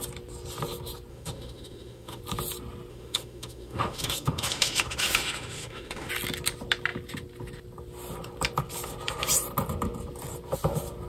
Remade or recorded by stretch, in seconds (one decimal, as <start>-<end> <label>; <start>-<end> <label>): 0.0-1.1 recorded; 1.1-2.2 remade; 2.2-2.9 recorded; 2.9-6.1 remade; 6.1-11.1 recorded